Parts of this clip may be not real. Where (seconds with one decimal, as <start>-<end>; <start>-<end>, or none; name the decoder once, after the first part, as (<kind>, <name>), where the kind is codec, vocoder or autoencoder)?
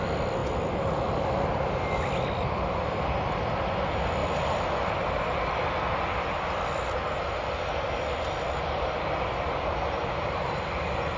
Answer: none